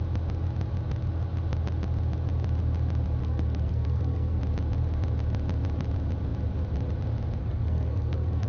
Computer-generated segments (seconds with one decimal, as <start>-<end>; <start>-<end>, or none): 3.2-4.4; 7.4-8.5